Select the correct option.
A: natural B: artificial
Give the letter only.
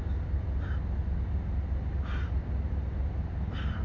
A